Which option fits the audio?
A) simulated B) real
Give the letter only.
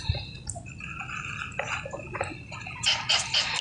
B